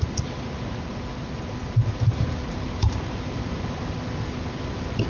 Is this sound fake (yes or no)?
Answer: no